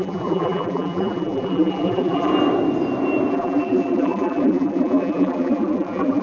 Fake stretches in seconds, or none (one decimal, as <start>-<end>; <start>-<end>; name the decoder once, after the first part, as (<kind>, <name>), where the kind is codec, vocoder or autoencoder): 0.0-2.3 (vocoder, BigVGAN v2); 3.3-6.2